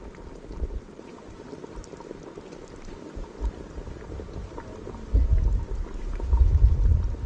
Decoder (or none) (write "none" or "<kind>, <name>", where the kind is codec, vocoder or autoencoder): none